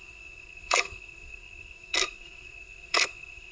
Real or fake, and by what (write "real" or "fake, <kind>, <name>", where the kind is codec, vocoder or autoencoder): fake, codec, SNAC